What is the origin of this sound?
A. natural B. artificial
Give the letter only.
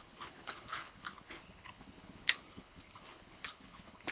B